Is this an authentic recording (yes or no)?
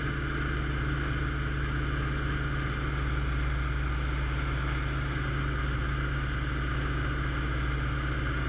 yes